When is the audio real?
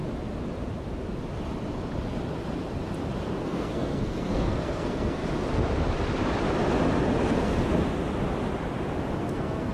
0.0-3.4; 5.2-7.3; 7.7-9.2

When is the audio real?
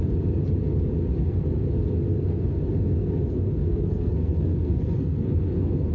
0.0-1.1; 1.6-2.1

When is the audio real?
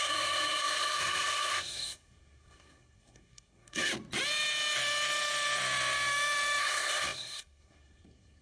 3.9-6.6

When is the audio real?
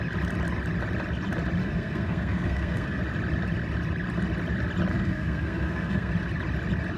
0.0-1.6; 3.0-4.9; 6.1-7.0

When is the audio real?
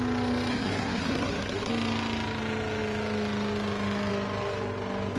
0.0-0.5; 1.7-5.2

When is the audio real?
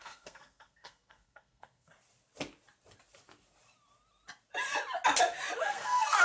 1.9-5.6